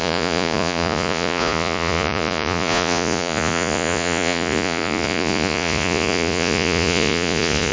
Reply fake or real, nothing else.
fake